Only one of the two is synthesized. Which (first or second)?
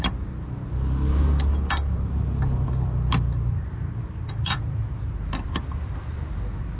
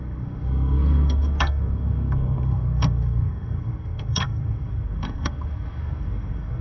second